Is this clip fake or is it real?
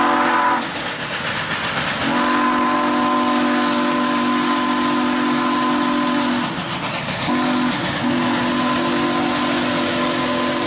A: real